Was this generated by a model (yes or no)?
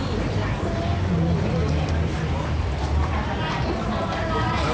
no